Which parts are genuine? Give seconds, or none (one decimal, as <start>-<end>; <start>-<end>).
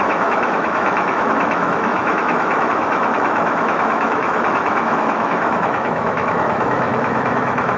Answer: none